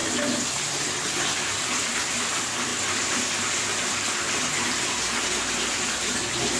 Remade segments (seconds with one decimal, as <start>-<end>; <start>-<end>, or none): none